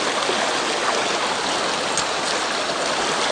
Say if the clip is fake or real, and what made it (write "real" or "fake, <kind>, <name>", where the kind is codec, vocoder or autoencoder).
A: real